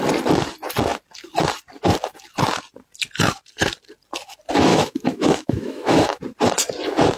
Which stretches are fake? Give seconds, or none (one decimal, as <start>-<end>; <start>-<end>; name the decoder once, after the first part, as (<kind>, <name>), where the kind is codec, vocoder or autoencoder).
4.7-6.2 (autoencoder, DAC-VAE)